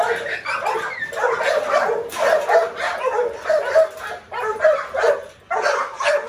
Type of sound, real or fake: real